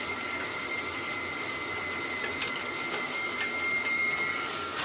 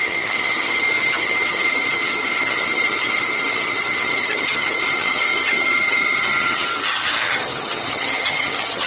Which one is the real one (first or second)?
first